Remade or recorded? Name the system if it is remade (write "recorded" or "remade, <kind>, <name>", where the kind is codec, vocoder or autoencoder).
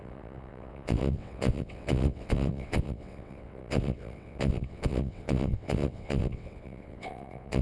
remade, vocoder, WaveNeXt